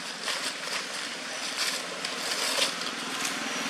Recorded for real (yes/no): yes